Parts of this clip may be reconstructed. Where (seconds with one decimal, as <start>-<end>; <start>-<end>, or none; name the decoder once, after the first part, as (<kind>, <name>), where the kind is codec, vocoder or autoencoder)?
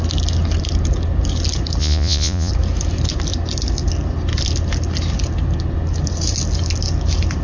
1.8-2.5 (vocoder, Vocos)